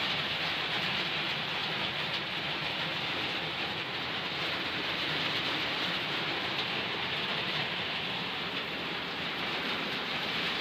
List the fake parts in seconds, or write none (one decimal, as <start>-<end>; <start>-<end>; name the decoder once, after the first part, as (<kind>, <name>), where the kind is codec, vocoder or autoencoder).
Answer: 0.0-10.6 (vocoder, BigVGAN v2)